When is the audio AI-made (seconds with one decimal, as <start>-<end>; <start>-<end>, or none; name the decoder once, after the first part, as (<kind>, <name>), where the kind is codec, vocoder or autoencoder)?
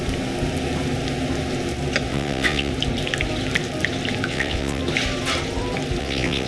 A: 2.1-2.7 (vocoder, WaveNeXt); 4.3-4.8; 6.0-6.5